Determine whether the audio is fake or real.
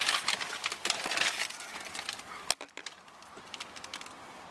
real